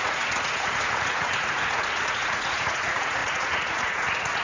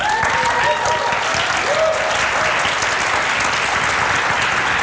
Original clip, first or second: second